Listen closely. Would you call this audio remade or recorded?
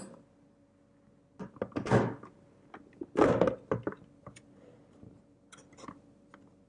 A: recorded